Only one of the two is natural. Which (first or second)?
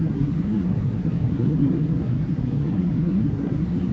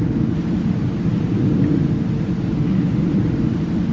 second